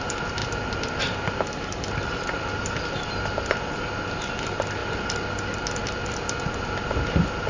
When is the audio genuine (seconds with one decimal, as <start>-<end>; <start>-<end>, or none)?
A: 0.0-7.5